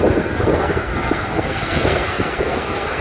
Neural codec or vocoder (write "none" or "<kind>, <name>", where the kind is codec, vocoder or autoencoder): codec, SNAC